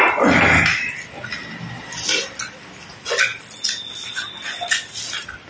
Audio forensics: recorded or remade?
recorded